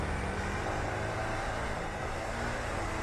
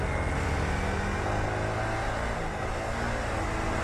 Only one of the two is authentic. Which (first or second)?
second